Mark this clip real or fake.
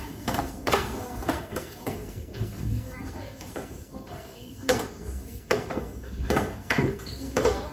fake